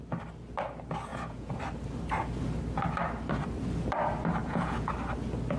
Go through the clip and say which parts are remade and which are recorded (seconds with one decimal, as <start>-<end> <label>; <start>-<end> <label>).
0.0-1.1 recorded; 1.1-1.6 remade; 1.6-4.4 recorded; 4.4-4.9 remade; 4.9-5.6 recorded